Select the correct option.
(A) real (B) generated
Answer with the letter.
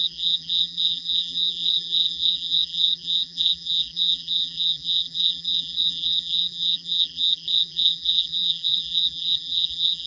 B